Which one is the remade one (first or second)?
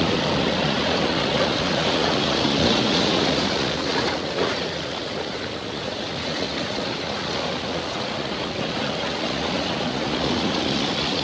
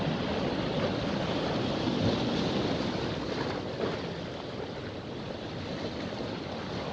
first